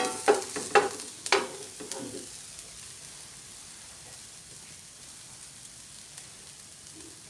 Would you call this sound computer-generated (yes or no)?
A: no